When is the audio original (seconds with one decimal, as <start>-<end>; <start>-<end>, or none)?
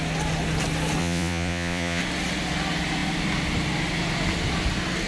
0.0-1.0; 2.0-5.1